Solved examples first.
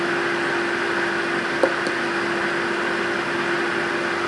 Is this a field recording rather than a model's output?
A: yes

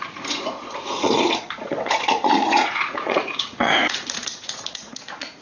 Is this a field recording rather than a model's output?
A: no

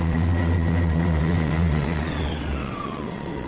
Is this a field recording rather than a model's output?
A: no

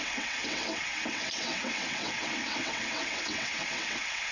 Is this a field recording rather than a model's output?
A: no